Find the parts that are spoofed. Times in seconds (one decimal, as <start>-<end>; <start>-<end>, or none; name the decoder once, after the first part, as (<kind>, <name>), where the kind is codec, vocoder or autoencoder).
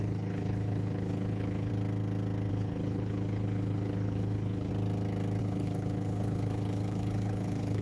0.0-1.7 (codec, HILCodec); 2.5-4.7; 5.4-7.8